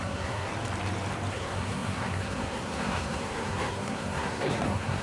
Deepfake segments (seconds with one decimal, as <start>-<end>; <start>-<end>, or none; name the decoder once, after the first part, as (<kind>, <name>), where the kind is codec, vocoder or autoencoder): 0.0-0.5 (codec, SNAC); 1.3-5.0